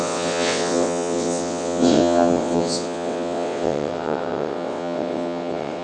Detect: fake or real fake